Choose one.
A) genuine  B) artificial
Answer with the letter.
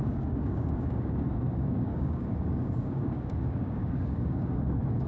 B